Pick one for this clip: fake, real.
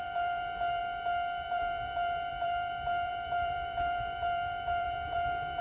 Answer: fake